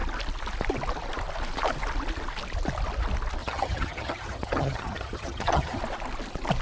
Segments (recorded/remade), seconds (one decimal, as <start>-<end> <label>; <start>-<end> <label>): 0.0-3.4 recorded; 3.4-5.8 remade; 5.8-6.6 recorded